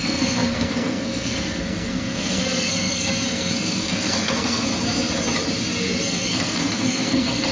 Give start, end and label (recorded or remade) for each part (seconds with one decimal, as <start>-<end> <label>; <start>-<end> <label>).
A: 0.0-4.7 remade; 4.7-6.0 recorded; 6.0-7.5 remade